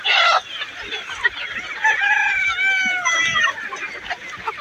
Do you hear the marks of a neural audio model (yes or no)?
no